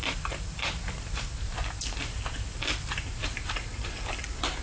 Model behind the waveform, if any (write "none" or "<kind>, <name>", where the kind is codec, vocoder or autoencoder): vocoder, BigVGAN v2